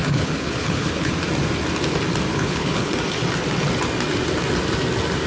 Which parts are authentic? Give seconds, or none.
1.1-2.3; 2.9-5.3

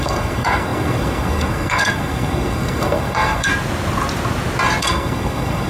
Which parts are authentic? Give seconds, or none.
3.5-4.8

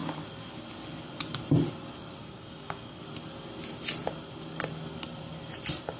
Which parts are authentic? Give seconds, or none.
0.0-2.2; 3.0-6.0

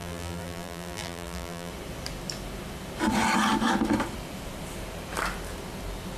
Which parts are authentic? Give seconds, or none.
1.7-6.2

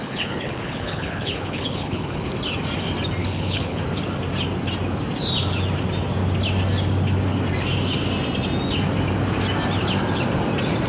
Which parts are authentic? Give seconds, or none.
2.3-3.2; 3.8-10.9

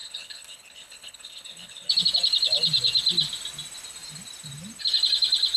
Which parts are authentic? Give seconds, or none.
1.9-5.6

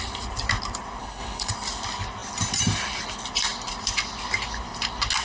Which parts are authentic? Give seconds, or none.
0.0-1.0; 1.5-5.2

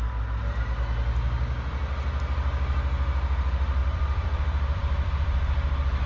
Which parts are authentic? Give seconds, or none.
0.0-3.8